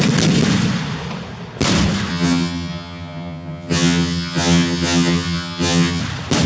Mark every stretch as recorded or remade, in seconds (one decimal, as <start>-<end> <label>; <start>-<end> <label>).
0.0-2.1 recorded; 2.1-6.0 remade; 6.0-6.5 recorded